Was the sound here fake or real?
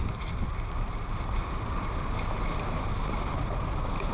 real